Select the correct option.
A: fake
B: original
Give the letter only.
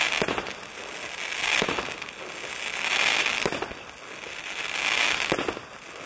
B